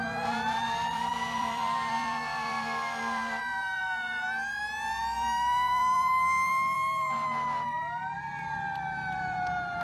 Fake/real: fake